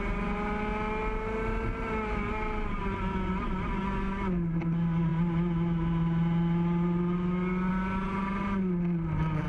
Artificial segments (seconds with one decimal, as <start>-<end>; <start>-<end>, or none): none